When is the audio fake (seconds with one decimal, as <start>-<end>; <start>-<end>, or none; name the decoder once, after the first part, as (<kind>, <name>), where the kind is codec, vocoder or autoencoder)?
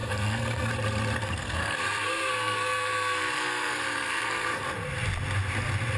0.0-0.7 (codec, SNAC); 1.2-4.6